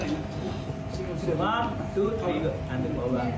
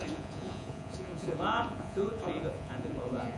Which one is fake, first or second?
second